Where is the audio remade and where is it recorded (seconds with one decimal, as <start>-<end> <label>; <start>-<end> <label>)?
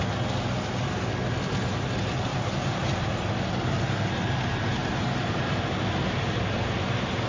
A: 0.0-2.3 recorded; 2.3-3.0 remade; 3.0-4.8 recorded; 4.8-5.7 remade; 5.7-7.3 recorded